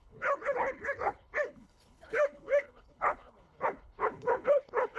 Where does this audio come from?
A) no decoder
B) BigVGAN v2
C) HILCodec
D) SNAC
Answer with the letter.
C